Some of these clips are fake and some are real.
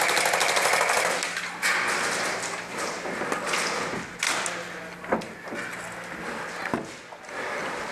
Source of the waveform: real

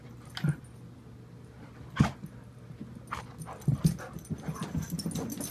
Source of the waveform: real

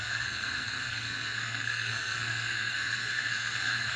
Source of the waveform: fake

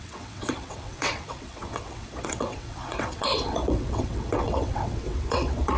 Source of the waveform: fake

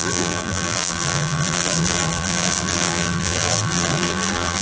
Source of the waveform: fake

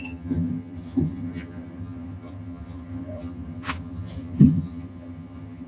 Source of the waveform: fake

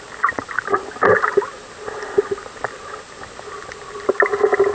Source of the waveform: real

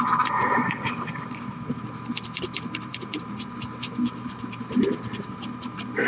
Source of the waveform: fake